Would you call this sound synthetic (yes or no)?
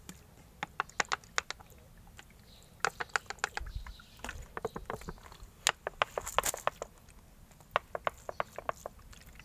no